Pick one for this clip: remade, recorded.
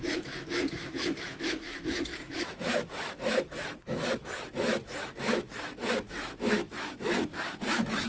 remade